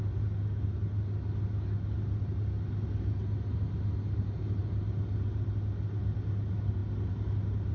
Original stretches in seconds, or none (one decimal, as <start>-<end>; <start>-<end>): 0.0-7.7